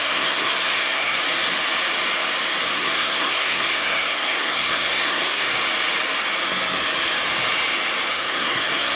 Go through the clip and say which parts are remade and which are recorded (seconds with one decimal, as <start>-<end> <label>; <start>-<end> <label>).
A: 0.0-1.2 remade; 1.2-2.7 recorded; 2.7-5.5 remade; 5.5-8.1 recorded; 8.1-9.0 remade